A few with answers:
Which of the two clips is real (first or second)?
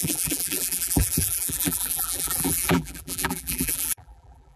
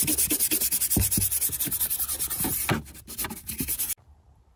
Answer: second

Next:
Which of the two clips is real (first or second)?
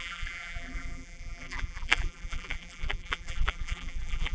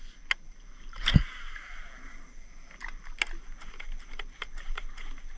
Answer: second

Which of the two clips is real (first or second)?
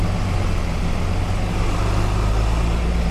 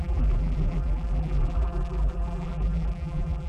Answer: first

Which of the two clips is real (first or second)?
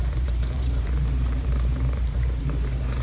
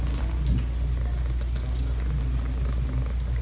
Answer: second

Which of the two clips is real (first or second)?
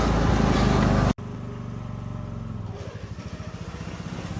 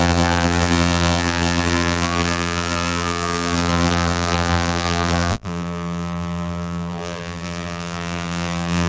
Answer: first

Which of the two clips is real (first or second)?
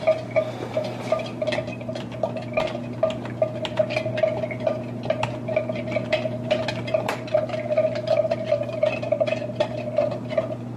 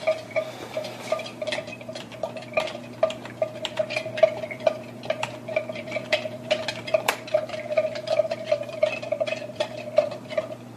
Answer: first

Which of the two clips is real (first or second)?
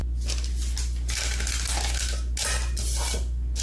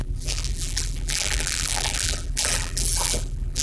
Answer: first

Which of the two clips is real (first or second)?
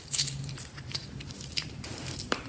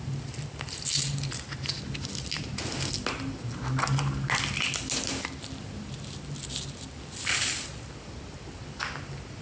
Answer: second